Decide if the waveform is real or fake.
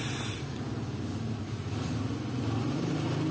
real